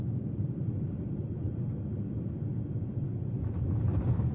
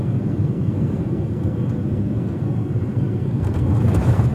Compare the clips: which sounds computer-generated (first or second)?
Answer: second